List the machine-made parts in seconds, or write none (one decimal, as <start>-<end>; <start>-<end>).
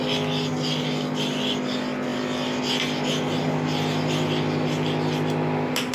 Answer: none